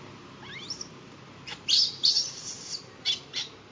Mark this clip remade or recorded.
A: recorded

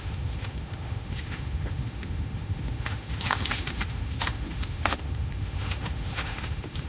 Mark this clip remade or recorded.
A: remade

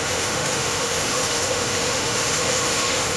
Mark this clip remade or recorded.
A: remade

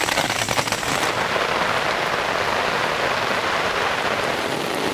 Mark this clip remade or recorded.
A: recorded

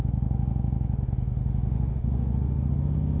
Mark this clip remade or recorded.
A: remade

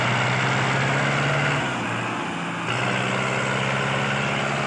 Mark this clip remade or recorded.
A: recorded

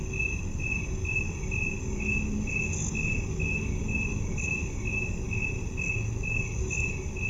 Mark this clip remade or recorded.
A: recorded